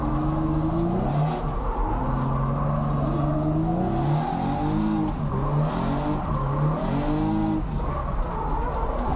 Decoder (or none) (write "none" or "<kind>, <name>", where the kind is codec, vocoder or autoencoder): none